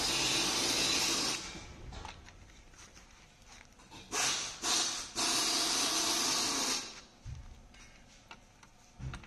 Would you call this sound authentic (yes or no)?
yes